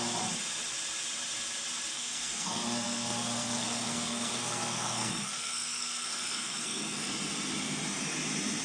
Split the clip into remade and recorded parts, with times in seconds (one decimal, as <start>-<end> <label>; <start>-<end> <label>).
0.0-1.9 recorded; 1.9-7.1 remade; 7.1-8.6 recorded